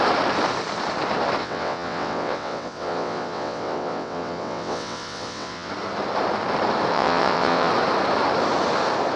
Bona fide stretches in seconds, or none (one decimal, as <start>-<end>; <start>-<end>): 0.0-1.4; 5.7-6.9; 7.7-9.2